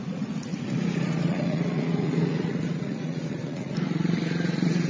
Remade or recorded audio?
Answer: remade